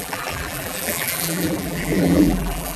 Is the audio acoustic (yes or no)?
no